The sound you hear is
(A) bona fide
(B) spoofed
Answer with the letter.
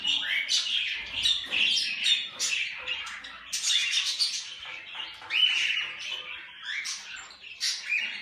A